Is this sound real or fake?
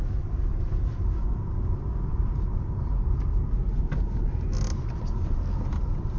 real